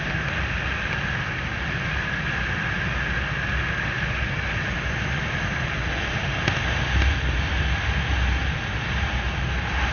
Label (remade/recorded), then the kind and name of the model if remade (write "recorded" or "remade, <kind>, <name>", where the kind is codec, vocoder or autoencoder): recorded